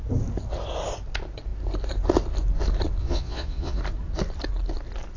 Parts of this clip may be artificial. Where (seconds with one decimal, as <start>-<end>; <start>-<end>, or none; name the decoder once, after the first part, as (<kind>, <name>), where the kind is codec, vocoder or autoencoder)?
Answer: 3.0-3.8 (vocoder, Vocos)

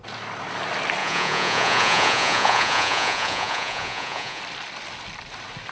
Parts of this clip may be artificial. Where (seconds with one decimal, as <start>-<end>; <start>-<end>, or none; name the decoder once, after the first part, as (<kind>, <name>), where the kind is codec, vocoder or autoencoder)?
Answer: 1.0-4.4 (vocoder, Vocos)